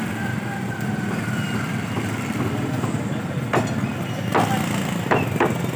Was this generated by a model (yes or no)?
no